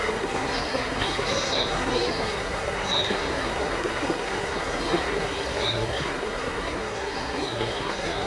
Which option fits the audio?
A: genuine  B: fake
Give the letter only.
B